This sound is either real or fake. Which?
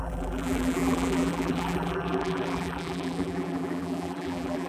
fake